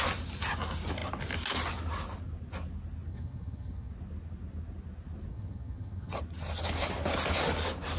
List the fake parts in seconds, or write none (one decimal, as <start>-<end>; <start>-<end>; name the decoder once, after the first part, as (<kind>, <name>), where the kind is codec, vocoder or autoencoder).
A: 3.1-3.9 (vocoder, HiFi-GAN); 5.3-6.2